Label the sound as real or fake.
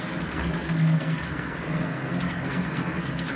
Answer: fake